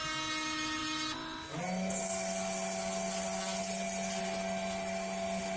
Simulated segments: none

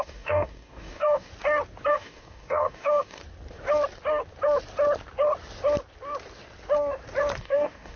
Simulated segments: 0.0-1.3 (codec, DAC); 1.9-3.2; 7.4-8.0

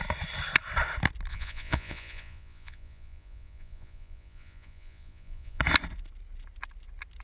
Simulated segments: 1.3-5.6 (vocoder, Vocos)

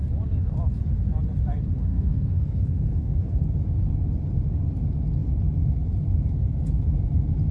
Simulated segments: 1.9-3.4 (codec, SNAC)

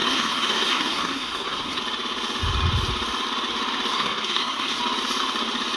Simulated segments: 0.0-1.8 (codec, SNAC); 3.9-4.8